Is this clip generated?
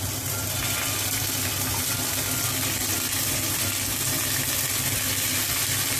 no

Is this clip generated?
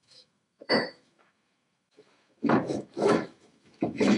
yes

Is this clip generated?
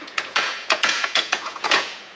yes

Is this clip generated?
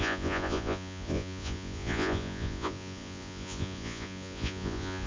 yes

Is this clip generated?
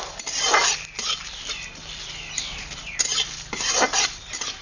no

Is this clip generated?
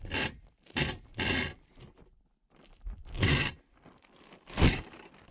yes